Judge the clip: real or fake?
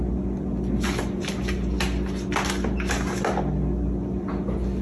real